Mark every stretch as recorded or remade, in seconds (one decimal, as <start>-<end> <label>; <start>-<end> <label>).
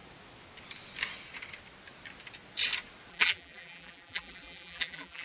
0.0-3.1 recorded; 3.1-5.2 remade